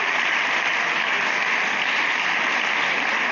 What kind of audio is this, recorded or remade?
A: recorded